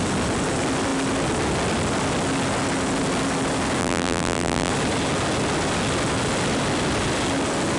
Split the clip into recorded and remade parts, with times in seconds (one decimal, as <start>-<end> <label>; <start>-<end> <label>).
0.0-3.8 recorded; 3.8-4.7 remade; 4.7-7.8 recorded

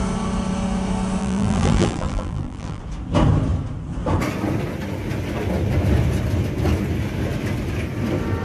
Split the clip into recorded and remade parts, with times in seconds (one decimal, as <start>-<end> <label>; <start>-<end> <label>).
0.0-1.2 recorded; 1.2-2.8 remade; 2.8-8.4 recorded

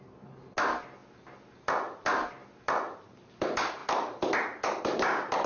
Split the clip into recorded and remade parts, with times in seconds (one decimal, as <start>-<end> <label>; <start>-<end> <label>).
0.0-5.5 recorded